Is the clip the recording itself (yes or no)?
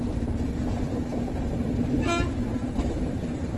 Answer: no